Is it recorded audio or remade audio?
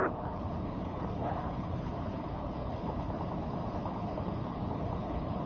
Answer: remade